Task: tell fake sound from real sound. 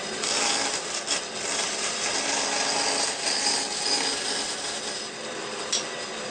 real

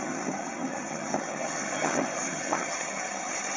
fake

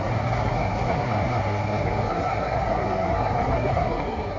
fake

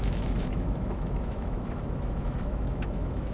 fake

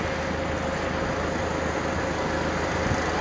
real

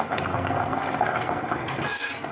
fake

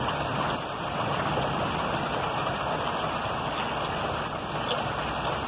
fake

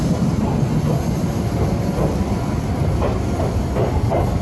real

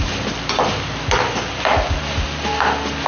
real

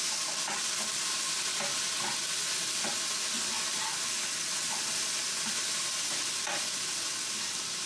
real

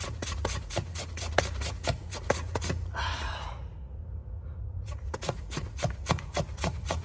fake